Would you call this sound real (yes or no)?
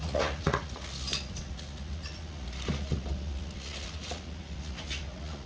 no